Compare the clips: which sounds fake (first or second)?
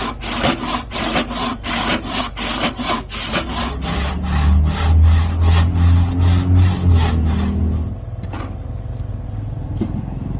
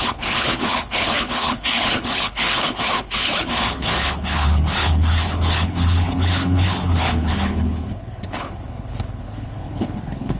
second